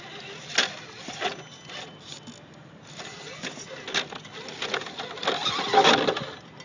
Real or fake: real